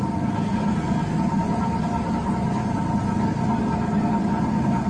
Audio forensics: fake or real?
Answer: real